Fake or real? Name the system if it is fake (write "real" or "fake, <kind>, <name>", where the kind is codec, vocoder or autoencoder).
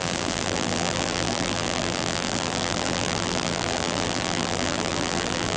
fake, vocoder, BigVGAN v2